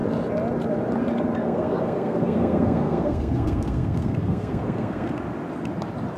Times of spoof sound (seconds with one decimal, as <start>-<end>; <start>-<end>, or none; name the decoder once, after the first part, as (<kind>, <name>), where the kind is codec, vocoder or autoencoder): 1.4-5.1 (codec, SNAC)